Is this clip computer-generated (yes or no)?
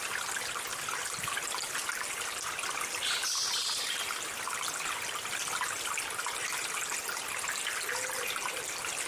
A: no